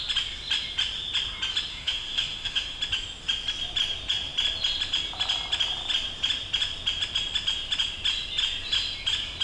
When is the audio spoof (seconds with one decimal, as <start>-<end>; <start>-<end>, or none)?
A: 1.7-2.8